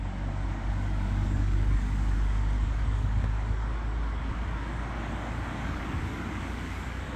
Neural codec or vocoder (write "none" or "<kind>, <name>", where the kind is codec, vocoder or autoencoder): codec, DAC